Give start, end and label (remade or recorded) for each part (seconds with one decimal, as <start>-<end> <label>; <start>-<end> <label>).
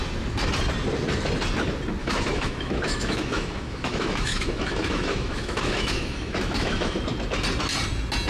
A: 0.0-2.0 recorded; 2.0-7.0 remade; 7.0-8.3 recorded